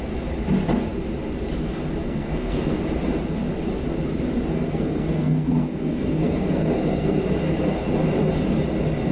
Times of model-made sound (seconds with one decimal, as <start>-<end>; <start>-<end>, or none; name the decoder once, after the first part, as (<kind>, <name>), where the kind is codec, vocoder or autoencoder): 2.0-2.8 (codec, SNAC); 4.5-7.2